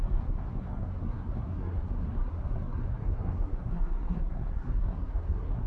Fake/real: fake